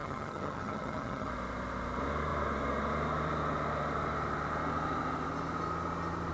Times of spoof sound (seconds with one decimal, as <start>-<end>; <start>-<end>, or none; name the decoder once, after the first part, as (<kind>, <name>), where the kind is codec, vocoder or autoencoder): 0.0-1.3 (vocoder, HiFi-GAN)